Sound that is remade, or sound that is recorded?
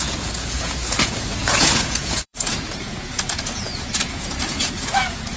remade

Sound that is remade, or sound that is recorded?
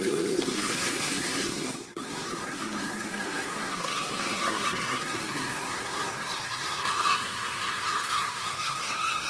remade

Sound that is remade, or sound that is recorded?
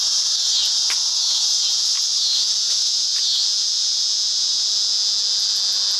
recorded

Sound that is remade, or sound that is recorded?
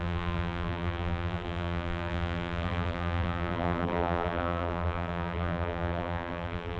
remade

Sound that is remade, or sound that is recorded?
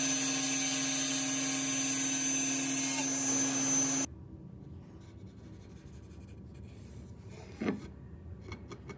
recorded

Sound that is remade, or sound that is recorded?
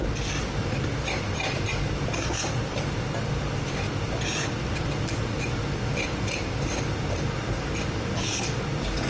remade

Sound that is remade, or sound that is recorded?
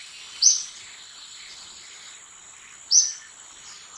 recorded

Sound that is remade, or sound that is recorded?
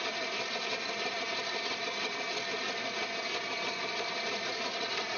recorded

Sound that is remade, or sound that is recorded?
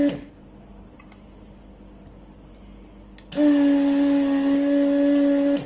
recorded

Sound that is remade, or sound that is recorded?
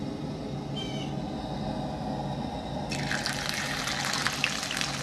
recorded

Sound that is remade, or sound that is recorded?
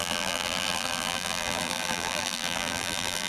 remade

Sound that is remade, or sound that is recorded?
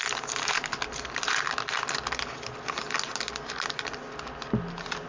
recorded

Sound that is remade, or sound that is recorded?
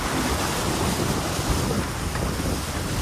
recorded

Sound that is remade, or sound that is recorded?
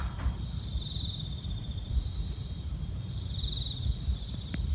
remade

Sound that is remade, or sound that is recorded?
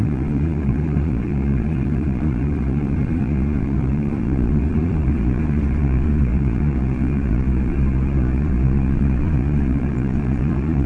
remade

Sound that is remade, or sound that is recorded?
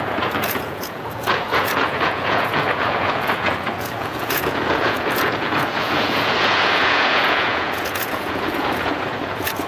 remade